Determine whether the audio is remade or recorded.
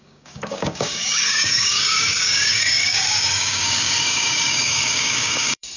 remade